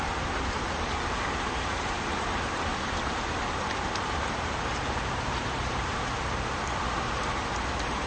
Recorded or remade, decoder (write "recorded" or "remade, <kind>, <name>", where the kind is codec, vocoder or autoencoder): remade, vocoder, BigVGAN v2